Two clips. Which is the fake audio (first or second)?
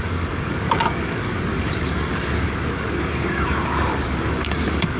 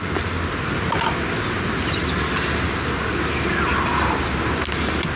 first